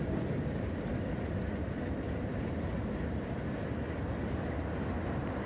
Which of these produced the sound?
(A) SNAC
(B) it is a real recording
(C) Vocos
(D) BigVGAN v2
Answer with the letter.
B